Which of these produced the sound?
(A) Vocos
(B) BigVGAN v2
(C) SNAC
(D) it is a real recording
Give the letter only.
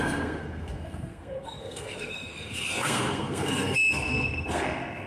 C